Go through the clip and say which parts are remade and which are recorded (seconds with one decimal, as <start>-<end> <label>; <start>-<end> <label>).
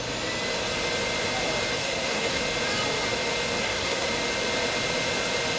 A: 0.0-1.8 recorded; 1.8-2.4 remade; 2.4-3.6 recorded; 3.6-4.1 remade; 4.1-5.6 recorded